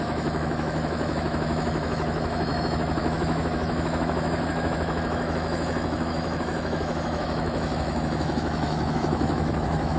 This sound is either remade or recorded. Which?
remade